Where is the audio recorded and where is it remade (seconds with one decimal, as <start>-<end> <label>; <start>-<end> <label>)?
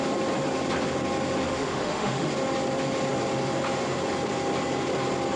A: 0.0-1.4 recorded; 1.4-2.3 remade; 2.3-5.4 recorded